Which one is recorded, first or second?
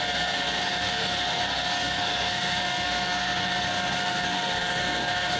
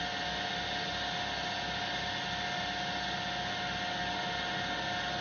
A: second